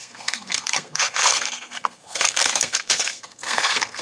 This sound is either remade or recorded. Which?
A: remade